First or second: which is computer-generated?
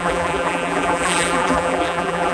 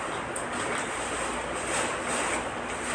first